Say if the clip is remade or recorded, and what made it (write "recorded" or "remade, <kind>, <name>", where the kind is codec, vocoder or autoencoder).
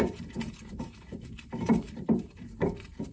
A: remade, vocoder, BigVGAN v2